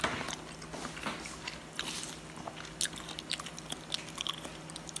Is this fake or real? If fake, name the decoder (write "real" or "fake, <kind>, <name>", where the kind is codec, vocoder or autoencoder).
real